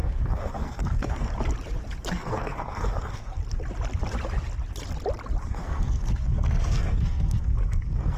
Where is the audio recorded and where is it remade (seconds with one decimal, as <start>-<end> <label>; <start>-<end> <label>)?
0.0-1.3 remade; 1.3-2.1 recorded; 2.1-3.4 remade; 3.4-5.5 recorded; 5.5-8.2 remade